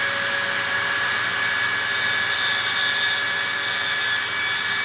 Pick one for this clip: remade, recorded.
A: recorded